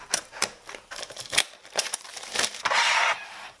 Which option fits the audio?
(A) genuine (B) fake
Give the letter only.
B